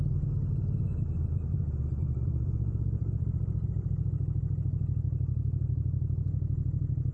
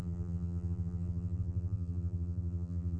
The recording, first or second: first